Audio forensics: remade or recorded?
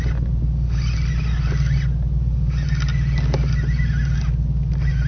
recorded